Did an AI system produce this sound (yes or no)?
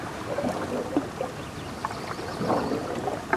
no